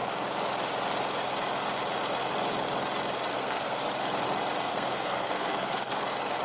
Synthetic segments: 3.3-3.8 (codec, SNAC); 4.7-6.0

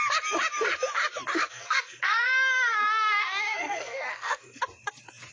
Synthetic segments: 1.4-4.6 (codec, SNAC)